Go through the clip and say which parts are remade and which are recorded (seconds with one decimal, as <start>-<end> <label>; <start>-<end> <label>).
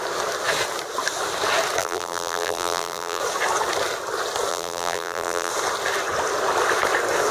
0.0-1.8 recorded; 1.8-3.2 remade; 3.2-4.5 recorded; 4.5-5.5 remade; 5.5-7.3 recorded